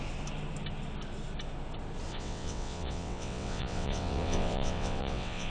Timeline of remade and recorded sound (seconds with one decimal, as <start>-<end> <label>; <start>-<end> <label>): 0.0-2.1 recorded; 2.1-5.5 remade